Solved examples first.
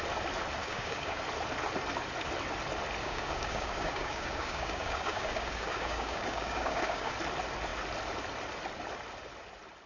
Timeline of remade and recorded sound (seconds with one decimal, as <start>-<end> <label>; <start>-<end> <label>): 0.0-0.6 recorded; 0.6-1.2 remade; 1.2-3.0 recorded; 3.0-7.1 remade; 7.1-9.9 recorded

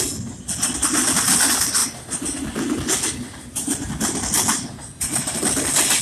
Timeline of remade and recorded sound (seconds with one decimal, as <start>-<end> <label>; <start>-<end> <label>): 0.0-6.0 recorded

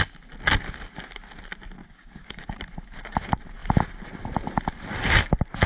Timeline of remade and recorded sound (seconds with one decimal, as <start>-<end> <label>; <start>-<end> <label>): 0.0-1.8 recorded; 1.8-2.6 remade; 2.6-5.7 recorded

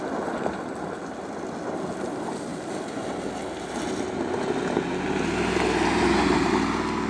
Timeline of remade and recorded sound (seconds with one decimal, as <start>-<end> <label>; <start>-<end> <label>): 0.0-7.1 recorded